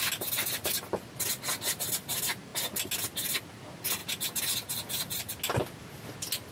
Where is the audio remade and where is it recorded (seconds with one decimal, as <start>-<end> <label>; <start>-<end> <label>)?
0.0-6.5 recorded